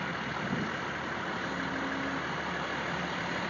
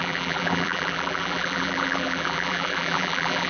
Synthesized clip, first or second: second